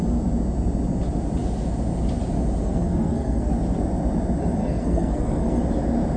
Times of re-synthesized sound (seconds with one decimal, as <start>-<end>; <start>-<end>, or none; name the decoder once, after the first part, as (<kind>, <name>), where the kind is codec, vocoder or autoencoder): 2.6-3.5 (codec, SNAC); 4.6-5.6